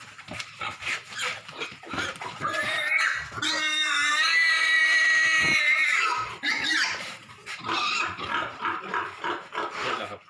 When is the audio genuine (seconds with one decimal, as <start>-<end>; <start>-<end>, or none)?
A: 2.9-4.1